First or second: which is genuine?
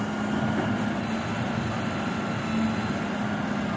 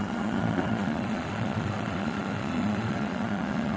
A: first